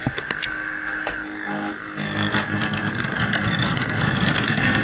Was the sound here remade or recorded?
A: remade